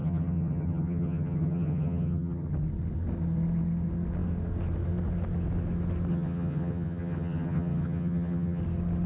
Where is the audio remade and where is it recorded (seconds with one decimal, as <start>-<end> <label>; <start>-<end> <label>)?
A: 0.0-2.5 remade; 2.5-6.1 recorded; 6.1-8.6 remade; 8.6-9.1 recorded